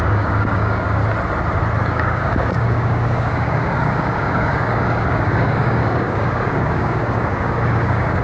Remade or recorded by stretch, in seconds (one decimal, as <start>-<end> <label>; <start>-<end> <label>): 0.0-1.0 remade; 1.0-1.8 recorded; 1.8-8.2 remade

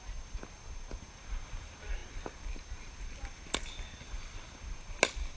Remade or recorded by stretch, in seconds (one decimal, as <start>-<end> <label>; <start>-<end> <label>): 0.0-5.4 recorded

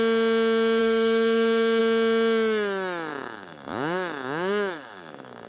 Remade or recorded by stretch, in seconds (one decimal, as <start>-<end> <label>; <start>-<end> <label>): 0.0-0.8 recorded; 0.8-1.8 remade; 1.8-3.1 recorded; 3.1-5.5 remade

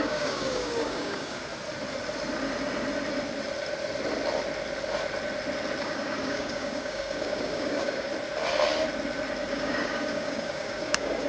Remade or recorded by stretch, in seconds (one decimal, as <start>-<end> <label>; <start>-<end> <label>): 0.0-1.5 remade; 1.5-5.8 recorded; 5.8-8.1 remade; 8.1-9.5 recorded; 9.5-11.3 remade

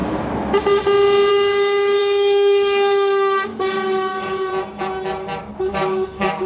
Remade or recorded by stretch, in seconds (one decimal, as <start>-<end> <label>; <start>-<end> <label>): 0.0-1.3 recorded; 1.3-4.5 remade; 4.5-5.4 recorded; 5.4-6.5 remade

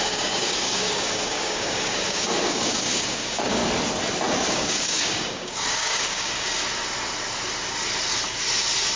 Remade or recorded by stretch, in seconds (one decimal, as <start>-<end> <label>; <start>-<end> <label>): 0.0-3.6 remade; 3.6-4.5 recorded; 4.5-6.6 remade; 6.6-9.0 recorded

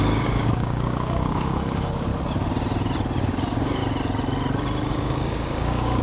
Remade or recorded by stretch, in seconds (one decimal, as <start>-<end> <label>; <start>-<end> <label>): 0.0-2.1 remade; 2.1-3.2 recorded; 3.2-3.8 remade; 3.8-4.9 recorded; 4.9-6.0 remade

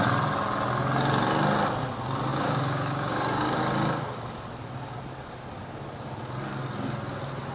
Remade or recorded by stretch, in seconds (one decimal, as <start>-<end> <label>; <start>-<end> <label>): 0.0-2.3 recorded; 2.3-3.6 remade; 3.6-7.5 recorded